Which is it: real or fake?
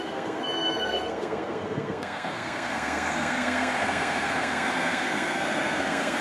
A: fake